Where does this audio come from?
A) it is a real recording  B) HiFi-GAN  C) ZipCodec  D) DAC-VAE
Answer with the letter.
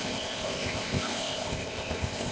C